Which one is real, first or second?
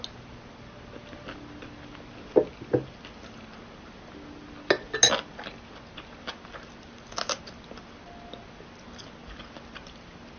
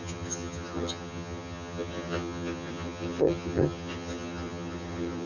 first